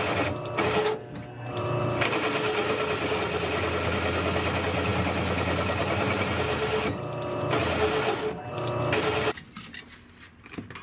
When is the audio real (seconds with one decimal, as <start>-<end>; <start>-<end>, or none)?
0.0-10.8